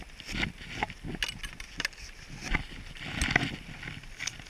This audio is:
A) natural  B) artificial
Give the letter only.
A